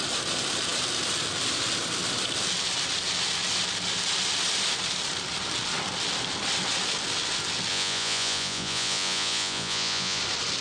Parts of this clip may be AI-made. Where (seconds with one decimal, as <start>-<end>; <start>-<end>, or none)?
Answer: 7.7-10.2